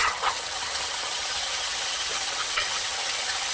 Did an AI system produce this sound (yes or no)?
yes